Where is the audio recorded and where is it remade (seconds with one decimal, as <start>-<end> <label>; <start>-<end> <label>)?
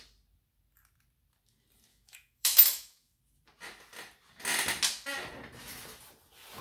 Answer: 0.0-1.9 recorded; 1.9-3.2 remade; 3.2-6.6 recorded